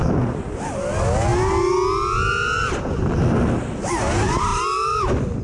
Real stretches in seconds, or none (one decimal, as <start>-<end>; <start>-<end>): 0.0-5.4